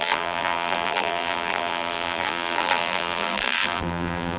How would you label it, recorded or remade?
remade